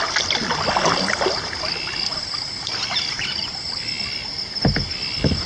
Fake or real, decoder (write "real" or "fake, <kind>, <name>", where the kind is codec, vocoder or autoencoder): real